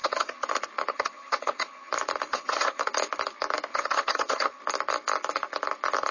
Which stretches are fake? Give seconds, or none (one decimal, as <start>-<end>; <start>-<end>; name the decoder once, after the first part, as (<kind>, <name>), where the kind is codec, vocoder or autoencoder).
0.0-0.5 (vocoder, HiFi-GAN); 0.9-1.9; 2.3-2.8; 3.7-4.6

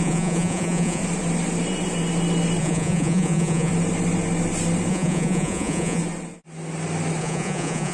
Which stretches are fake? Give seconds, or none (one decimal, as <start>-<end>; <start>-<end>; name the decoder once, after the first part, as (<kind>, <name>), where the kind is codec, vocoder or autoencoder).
0.0-1.0 (vocoder, Vocos); 2.6-3.7; 4.9-6.0; 7.2-7.9

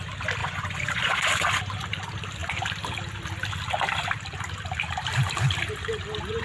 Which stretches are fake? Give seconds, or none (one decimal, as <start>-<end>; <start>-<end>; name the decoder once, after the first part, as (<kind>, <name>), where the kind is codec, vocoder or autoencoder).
0.4-1.3 (vocoder, Vocos)

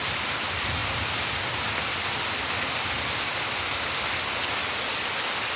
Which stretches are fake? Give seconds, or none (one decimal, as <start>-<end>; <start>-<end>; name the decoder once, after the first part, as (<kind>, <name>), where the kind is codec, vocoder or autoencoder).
none

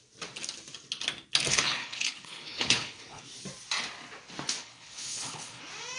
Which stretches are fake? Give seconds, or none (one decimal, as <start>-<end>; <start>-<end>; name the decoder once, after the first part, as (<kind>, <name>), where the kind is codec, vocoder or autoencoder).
1.5-3.2 (codec, HILCodec); 4.6-5.6

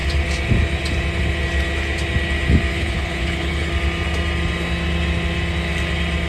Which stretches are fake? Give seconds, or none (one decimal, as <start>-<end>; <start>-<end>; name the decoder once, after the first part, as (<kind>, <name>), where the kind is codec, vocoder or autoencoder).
2.7-3.7 (codec, HILCodec)